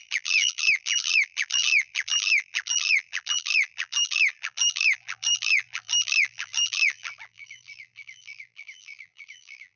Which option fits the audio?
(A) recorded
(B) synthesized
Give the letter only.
B